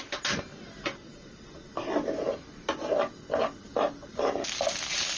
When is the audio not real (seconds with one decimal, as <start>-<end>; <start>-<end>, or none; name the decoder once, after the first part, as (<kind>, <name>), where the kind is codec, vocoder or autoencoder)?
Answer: none